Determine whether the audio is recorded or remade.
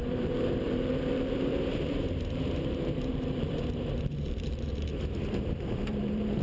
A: remade